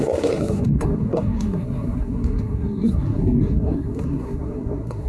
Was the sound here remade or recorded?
remade